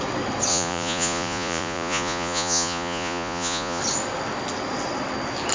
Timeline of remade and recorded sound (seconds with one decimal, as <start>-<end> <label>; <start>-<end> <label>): 0.0-0.5 recorded; 0.5-3.8 remade; 3.8-5.5 recorded